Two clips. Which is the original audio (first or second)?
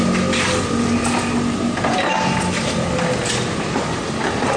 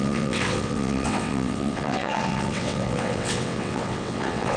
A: first